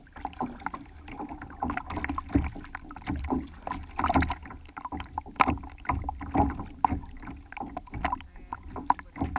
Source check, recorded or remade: recorded